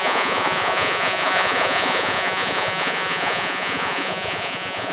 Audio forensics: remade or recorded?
remade